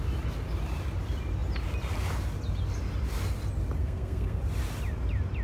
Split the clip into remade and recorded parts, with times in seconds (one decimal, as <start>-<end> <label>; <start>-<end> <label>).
0.0-3.8 recorded; 3.8-4.4 remade; 4.4-5.4 recorded